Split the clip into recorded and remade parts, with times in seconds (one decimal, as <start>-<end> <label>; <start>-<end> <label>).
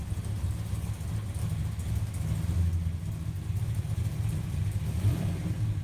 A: 0.0-3.5 recorded; 3.5-5.8 remade